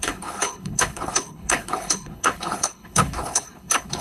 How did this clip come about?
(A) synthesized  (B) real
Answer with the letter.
A